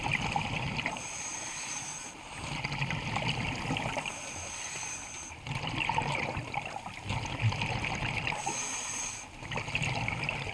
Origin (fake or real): real